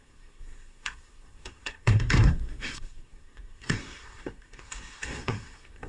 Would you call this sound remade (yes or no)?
yes